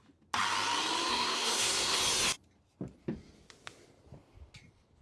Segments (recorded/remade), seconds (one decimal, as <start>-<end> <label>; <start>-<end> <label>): 0.0-1.1 recorded; 1.1-2.0 remade; 2.0-5.0 recorded